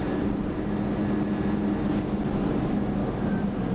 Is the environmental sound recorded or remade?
recorded